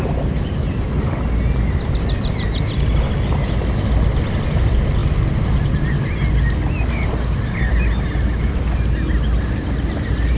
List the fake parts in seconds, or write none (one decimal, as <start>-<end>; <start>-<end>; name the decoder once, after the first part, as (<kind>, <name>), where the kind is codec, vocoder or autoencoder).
none